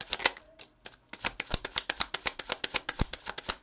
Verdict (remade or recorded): recorded